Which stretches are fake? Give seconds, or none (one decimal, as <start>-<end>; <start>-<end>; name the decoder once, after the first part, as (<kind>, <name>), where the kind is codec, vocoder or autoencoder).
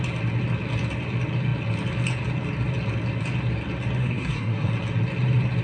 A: 4.0-4.7 (codec, SNAC)